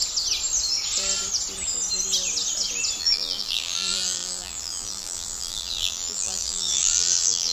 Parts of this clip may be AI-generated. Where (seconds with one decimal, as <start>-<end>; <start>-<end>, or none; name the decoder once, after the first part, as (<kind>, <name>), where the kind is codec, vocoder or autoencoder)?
3.0-7.5 (vocoder, BigVGAN v2)

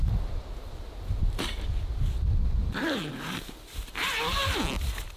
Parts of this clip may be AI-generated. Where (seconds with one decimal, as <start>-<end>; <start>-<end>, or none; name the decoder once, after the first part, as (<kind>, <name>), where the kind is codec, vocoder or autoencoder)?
2.6-4.1 (vocoder, BigVGAN v2)

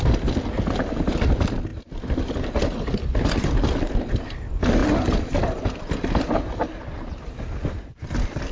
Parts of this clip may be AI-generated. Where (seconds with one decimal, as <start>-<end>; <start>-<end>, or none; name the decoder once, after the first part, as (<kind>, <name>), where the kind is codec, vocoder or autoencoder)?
none

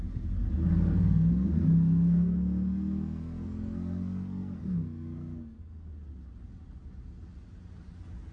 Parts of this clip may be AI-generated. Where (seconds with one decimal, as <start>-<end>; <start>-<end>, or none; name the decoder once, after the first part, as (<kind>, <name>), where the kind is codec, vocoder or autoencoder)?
0.9-5.9 (codec, SNAC)

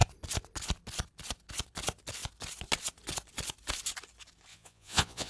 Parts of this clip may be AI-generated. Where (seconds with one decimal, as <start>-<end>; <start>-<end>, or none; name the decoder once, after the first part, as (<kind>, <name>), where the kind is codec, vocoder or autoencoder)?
4.5-5.3 (vocoder, Vocos)